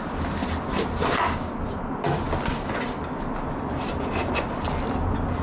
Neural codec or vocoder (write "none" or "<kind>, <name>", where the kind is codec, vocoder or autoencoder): none